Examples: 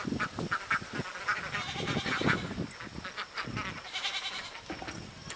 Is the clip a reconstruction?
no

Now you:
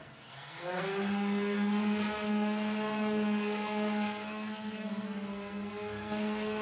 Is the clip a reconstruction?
yes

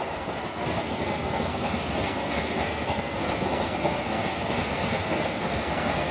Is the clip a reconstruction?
yes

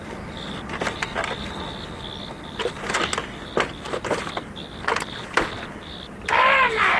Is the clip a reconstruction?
no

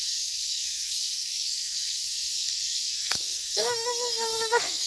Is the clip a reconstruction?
yes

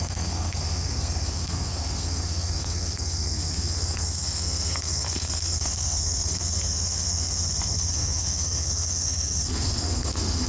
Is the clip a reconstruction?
yes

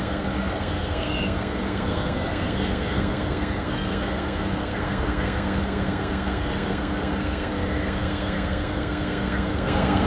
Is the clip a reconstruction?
yes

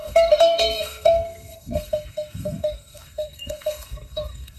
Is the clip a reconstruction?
yes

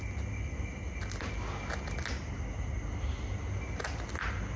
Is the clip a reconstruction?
no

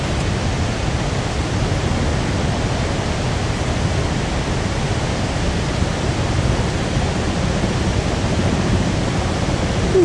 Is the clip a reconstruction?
no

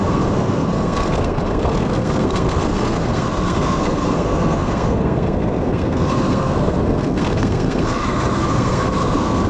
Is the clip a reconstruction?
yes